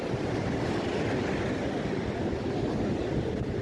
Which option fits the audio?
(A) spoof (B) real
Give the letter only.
B